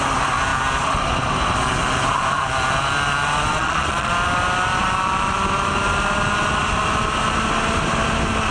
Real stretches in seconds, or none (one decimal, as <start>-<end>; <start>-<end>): 0.0-3.5; 4.1-8.5